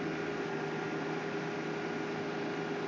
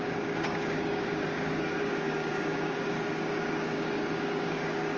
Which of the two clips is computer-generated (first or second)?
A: second